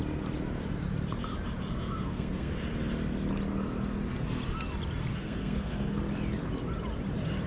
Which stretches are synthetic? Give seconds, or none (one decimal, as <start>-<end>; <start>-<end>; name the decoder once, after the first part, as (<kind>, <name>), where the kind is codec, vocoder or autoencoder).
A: 1.7-2.5 (codec, SNAC); 5.1-6.0